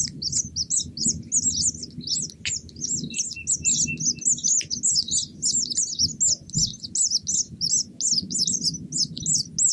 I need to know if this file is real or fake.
real